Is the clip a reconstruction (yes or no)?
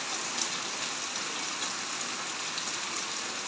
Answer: no